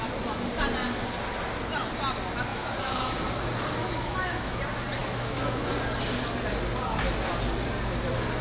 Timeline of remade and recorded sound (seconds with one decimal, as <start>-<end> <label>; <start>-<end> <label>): 0.0-2.5 recorded; 2.5-3.1 remade; 3.1-3.8 recorded; 3.8-4.6 remade; 4.6-5.0 recorded; 5.0-5.7 remade; 5.7-8.4 recorded